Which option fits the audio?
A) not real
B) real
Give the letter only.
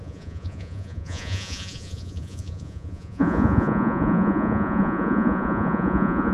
A